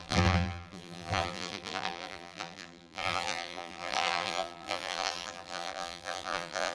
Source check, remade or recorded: remade